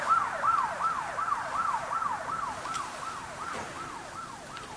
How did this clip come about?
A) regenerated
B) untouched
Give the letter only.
A